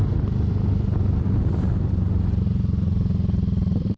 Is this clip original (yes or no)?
yes